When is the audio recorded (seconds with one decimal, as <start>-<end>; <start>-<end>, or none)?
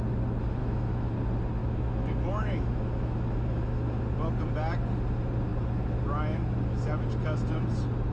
0.0-0.6; 1.1-1.6; 4.0-8.1